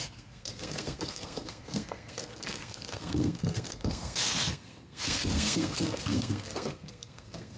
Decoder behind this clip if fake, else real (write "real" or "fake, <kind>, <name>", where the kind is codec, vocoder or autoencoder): fake, codec, SNAC